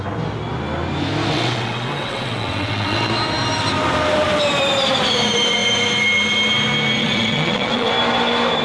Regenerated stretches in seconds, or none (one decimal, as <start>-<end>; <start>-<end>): 1.3-3.1; 7.0-7.9